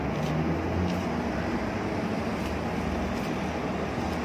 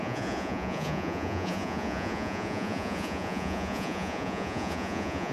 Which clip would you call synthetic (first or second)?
second